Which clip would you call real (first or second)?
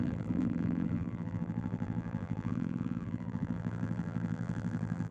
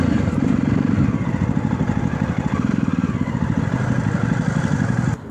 second